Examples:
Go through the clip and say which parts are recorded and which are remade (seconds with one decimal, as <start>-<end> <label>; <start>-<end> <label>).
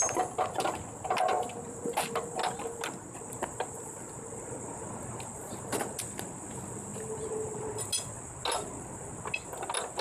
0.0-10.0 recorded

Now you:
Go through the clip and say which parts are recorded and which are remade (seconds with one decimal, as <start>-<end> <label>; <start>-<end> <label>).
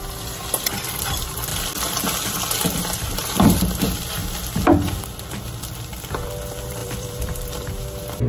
0.0-1.5 remade; 1.5-2.2 recorded; 2.2-4.2 remade; 4.2-5.3 recorded; 5.3-8.3 remade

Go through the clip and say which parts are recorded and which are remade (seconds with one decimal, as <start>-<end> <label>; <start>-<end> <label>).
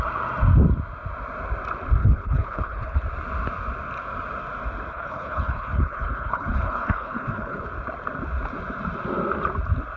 0.0-2.0 recorded; 2.0-3.0 remade; 3.0-4.9 recorded; 4.9-7.7 remade; 7.7-10.0 recorded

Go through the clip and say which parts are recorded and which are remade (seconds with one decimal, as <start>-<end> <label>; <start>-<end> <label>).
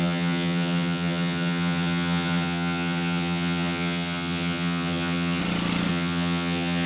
0.0-5.4 remade; 5.4-5.9 recorded; 5.9-6.9 remade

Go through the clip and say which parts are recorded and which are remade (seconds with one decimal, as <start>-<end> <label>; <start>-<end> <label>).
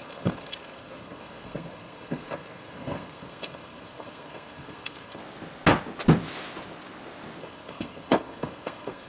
0.0-5.2 remade; 5.2-7.4 recorded; 7.4-9.1 remade